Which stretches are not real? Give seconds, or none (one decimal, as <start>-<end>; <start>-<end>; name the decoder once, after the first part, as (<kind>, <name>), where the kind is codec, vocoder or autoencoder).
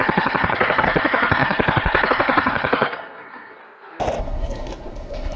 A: 0.0-3.6 (codec, SNAC); 4.2-5.4